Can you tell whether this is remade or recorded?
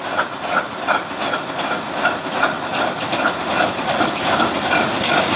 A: recorded